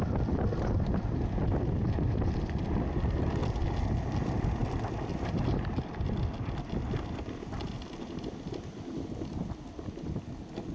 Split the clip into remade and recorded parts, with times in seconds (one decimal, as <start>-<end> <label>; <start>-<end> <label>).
0.0-10.7 recorded